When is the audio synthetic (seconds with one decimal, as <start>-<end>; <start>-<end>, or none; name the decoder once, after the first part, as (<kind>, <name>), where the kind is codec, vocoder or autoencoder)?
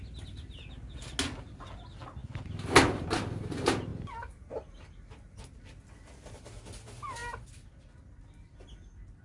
none